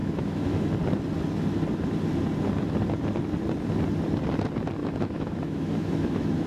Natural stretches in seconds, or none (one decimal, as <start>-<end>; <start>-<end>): 0.7-4.8